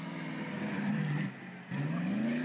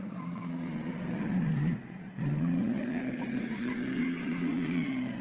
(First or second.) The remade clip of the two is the second